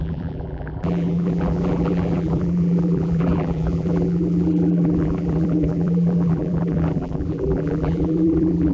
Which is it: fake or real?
fake